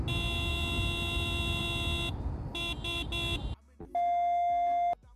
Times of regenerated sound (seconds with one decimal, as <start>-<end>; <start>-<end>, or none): none